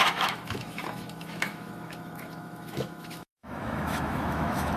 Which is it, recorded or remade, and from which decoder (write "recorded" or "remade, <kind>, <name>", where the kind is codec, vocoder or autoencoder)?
remade, autoencoder, DAC-VAE